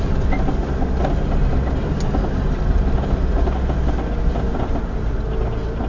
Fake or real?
real